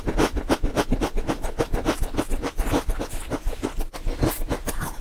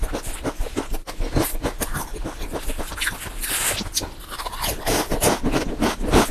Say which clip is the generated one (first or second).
first